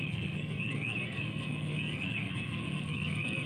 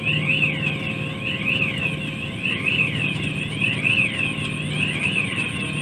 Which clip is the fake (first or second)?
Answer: first